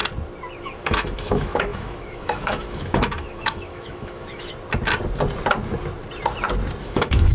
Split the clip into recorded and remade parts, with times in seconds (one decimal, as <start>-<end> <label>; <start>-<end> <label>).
0.0-0.6 recorded; 0.6-4.5 remade; 4.5-6.8 recorded; 6.8-7.3 remade